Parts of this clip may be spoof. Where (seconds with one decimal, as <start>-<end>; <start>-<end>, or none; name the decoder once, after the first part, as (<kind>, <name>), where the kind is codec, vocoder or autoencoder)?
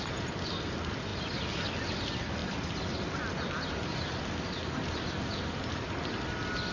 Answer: none